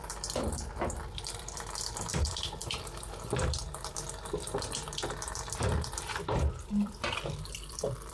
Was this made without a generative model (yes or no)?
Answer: no